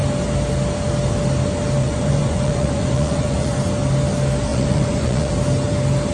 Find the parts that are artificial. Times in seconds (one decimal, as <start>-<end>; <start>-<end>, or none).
1.8-3.6; 4.5-5.3